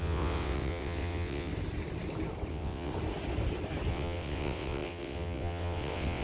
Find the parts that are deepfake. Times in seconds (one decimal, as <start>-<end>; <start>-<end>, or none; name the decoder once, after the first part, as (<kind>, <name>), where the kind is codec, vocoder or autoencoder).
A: 0.0-1.5 (vocoder, WaveNeXt); 2.5-2.9; 3.9-6.2